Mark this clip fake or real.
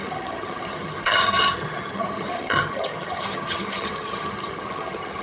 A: fake